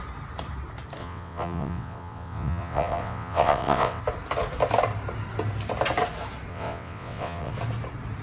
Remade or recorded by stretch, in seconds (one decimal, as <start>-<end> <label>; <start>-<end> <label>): 0.0-1.0 recorded; 1.0-4.0 remade; 4.0-6.5 recorded; 6.5-7.5 remade; 7.5-8.2 recorded

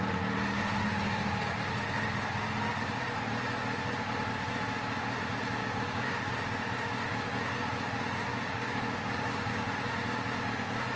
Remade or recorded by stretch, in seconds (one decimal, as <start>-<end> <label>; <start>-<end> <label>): 0.0-5.6 recorded; 5.6-6.3 remade; 6.3-8.3 recorded; 8.3-9.7 remade; 9.7-11.0 recorded

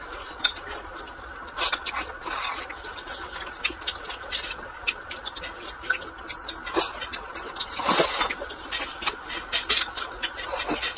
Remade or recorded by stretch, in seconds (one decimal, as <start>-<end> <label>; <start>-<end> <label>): 0.0-11.0 recorded

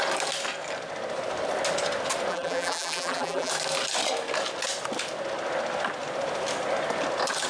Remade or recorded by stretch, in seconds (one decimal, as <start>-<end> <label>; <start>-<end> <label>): 0.0-2.3 recorded; 2.3-3.5 remade; 3.5-7.5 recorded